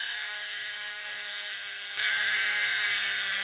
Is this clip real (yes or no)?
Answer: no